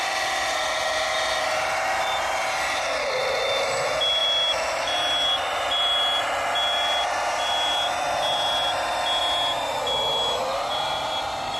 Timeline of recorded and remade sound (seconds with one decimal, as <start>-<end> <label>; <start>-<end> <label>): 0.0-11.6 recorded